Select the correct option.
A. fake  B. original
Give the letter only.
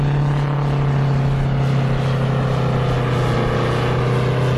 B